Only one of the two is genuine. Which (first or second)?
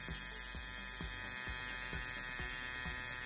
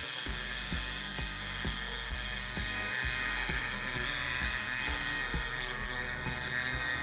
first